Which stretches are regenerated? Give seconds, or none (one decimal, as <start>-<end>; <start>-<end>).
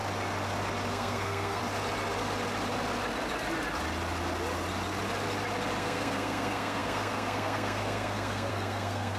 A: 0.9-1.6; 5.8-9.2